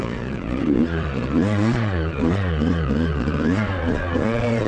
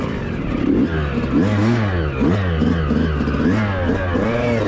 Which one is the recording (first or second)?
second